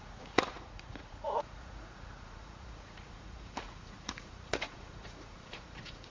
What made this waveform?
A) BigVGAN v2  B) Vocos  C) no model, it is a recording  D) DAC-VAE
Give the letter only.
B